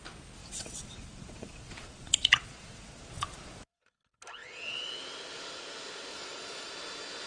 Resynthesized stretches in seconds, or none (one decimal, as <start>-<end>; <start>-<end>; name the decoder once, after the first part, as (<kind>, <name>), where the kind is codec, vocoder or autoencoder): 0.4-3.9 (vocoder, Vocos); 4.4-4.9; 6.1-6.7